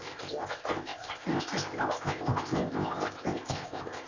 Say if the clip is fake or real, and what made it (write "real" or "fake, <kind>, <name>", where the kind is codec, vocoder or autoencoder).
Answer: fake, codec, ZipCodec